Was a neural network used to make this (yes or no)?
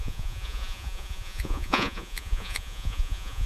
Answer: yes